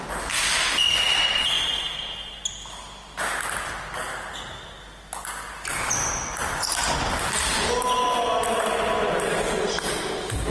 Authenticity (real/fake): real